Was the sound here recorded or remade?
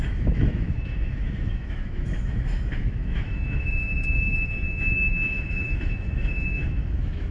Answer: remade